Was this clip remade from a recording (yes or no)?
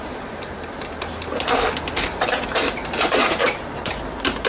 yes